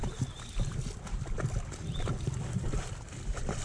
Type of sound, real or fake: real